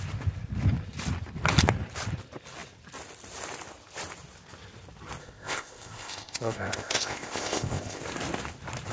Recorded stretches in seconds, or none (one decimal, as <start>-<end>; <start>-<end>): 0.0-5.2; 8.0-8.9